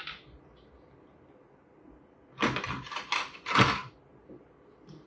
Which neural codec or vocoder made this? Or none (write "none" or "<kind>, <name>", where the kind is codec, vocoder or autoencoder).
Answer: none